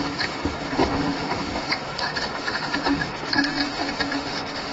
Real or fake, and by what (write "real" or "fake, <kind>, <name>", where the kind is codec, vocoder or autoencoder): fake, autoencoder, DAC-VAE